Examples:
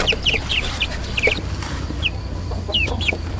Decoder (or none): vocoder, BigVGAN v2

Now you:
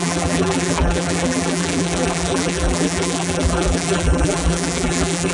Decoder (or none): vocoder, BigVGAN v2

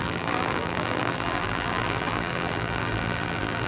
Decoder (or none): vocoder, BigVGAN v2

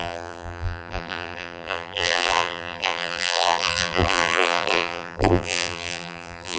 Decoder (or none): vocoder, BigVGAN v2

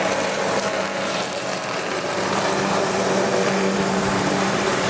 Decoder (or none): vocoder, BigVGAN v2